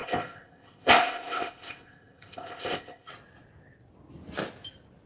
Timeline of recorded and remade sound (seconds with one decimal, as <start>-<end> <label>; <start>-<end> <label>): 0.0-3.1 remade; 3.1-5.1 recorded